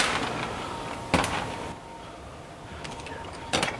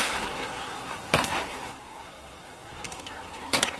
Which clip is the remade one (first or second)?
second